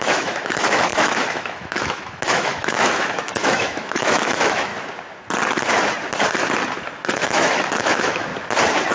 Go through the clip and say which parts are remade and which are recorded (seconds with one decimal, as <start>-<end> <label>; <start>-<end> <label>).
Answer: 0.0-4.7 remade; 4.7-7.1 recorded; 7.1-8.3 remade; 8.3-8.9 recorded